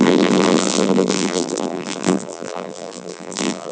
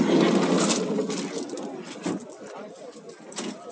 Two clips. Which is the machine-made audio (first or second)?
first